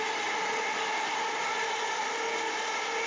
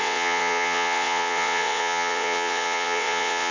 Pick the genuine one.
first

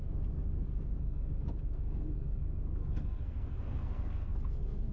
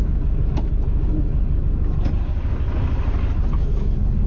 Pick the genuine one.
second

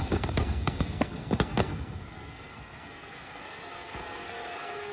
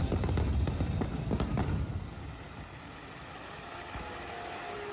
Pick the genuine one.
second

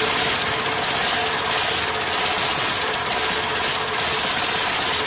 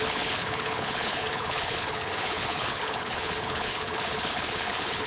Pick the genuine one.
first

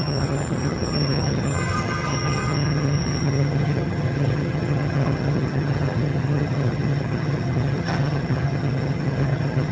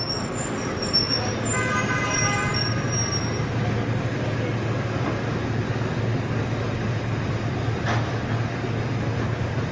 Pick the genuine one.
second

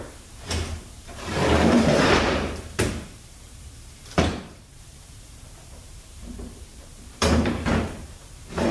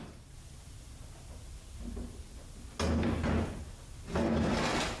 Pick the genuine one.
second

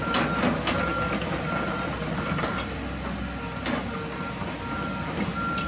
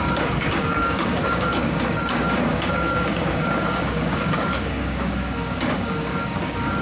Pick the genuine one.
first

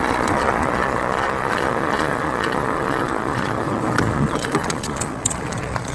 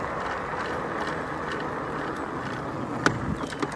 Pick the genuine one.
second